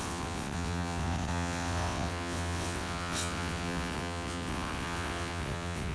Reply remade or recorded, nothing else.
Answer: remade